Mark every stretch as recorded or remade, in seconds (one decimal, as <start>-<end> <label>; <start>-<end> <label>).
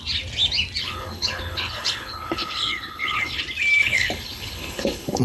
0.0-0.8 recorded; 0.8-3.4 remade; 3.4-3.8 recorded; 3.8-5.2 remade